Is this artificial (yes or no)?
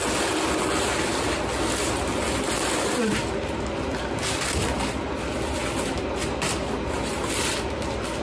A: no